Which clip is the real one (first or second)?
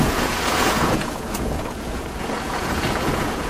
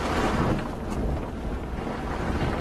second